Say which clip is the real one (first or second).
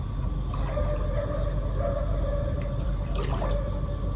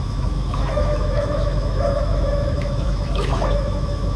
first